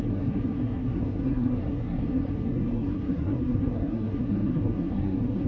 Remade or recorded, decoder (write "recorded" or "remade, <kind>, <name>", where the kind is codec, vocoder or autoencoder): remade, codec, SNAC